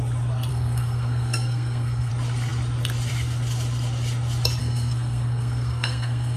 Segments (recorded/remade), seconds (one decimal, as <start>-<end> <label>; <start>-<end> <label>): 0.0-0.5 recorded; 0.5-2.1 remade; 2.1-4.6 recorded; 4.6-6.4 remade